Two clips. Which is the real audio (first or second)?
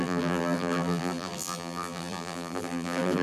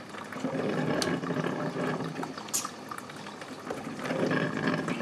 second